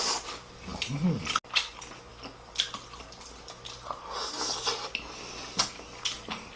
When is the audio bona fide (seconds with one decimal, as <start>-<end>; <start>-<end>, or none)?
0.0-6.6